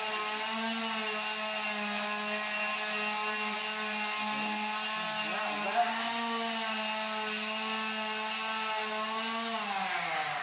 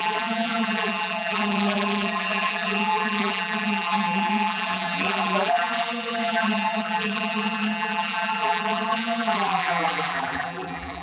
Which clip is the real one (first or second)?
first